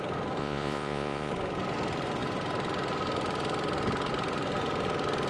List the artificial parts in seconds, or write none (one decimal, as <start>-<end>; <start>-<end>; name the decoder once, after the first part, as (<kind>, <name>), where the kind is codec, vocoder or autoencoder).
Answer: 0.4-1.3 (vocoder, Vocos)